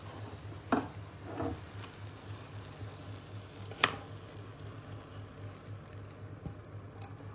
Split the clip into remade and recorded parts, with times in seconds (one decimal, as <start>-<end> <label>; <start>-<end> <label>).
0.0-7.3 recorded